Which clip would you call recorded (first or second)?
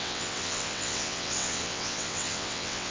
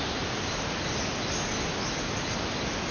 second